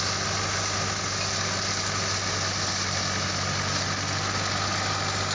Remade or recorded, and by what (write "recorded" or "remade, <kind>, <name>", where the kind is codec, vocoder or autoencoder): recorded